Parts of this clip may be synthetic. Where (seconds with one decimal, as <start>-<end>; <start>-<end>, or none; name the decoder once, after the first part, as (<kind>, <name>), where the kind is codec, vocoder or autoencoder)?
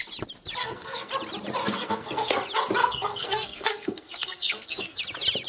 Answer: 0.6-1.1 (codec, SNAC); 1.6-2.4; 2.8-5.0